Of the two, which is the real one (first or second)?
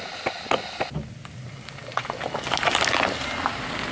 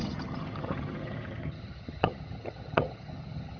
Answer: first